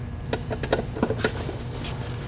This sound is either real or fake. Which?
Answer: real